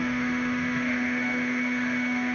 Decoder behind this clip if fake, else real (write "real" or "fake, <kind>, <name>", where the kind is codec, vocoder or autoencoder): fake, autoencoder, DAC-VAE